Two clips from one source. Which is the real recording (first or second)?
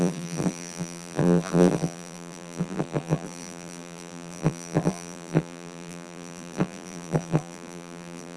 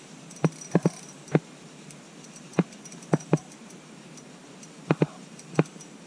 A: second